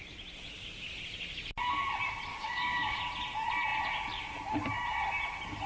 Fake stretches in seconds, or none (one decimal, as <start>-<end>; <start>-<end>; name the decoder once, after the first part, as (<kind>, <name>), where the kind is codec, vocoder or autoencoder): 2.3-3.0 (codec, DAC)